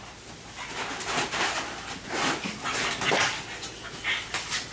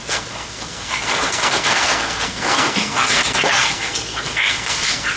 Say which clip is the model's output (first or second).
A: second